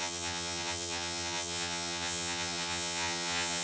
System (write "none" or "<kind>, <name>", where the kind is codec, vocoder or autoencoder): vocoder, HiFi-GAN